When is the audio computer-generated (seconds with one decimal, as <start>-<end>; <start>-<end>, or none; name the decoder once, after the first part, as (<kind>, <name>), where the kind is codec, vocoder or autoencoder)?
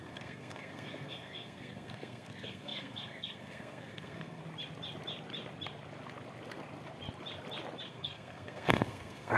0.0-4.4 (codec, SNAC); 7.9-9.4